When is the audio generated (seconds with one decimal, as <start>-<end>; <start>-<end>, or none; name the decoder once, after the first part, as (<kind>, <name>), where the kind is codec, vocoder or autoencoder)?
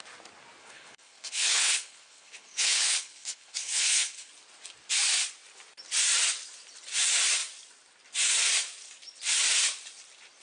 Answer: 0.6-4.3 (codec, HILCodec)